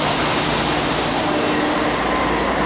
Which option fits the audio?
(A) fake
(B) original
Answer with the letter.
B